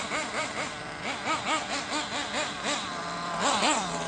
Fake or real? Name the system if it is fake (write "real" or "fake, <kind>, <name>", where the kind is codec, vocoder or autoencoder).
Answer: fake, vocoder, BigVGAN v2